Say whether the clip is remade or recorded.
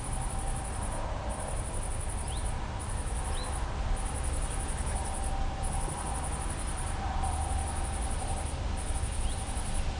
recorded